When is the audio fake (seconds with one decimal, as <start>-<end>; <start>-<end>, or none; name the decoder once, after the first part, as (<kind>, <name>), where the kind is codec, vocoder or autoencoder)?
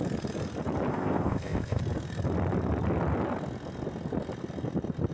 0.9-1.8 (codec, ZipCodec)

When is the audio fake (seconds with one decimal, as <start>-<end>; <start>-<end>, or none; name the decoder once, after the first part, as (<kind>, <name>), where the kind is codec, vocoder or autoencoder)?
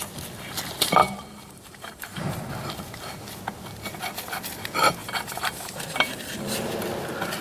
1.0-2.5 (vocoder, BigVGAN v2); 5.0-6.7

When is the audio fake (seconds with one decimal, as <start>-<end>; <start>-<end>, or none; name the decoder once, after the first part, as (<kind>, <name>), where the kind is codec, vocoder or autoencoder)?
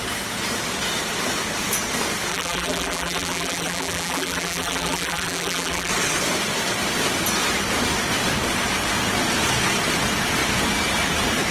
2.3-5.9 (vocoder, BigVGAN v2)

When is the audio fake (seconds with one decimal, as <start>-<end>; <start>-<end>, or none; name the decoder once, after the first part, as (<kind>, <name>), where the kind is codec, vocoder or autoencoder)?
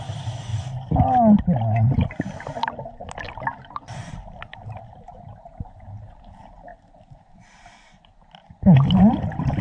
none